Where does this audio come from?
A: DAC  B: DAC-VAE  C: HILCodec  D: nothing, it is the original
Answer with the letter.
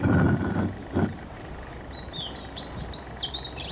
D